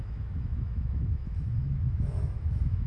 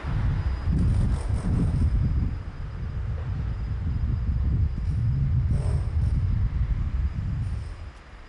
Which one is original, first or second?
second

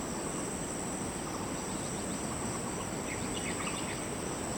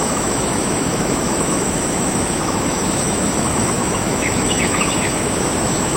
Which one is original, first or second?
first